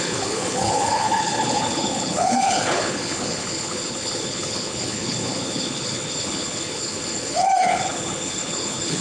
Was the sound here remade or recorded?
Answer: remade